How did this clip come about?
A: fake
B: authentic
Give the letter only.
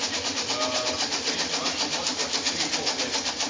B